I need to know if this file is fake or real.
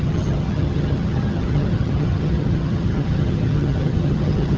fake